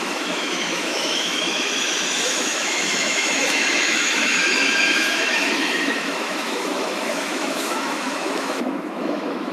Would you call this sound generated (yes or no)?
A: yes